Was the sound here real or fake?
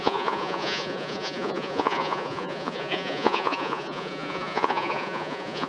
fake